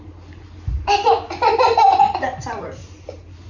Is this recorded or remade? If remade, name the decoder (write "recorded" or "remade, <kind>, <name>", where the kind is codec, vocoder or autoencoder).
recorded